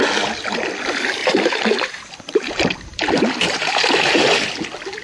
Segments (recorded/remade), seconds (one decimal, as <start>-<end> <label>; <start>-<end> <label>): 0.0-1.2 recorded; 1.2-4.2 remade; 4.2-5.0 recorded